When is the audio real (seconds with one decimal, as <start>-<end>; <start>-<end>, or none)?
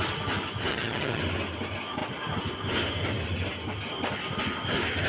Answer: 0.0-0.7; 1.2-5.1